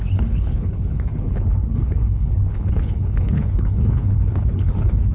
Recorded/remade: remade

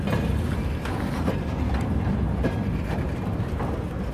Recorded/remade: recorded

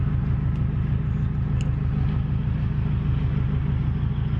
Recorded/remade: recorded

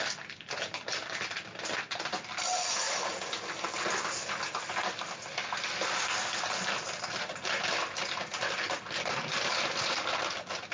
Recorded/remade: recorded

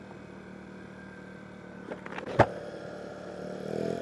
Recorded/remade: remade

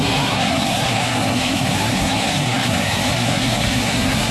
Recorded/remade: remade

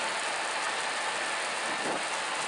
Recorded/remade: recorded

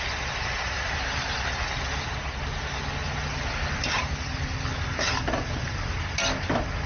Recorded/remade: recorded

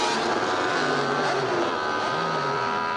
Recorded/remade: remade